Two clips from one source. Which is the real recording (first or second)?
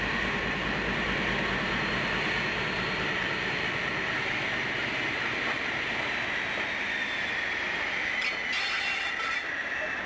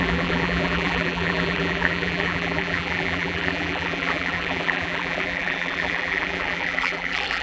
first